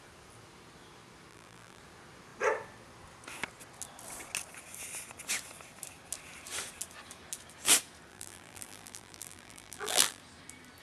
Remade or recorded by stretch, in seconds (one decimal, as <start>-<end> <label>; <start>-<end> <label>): 0.0-1.3 recorded; 1.3-1.8 remade; 1.8-8.1 recorded; 8.1-10.2 remade; 10.2-10.8 recorded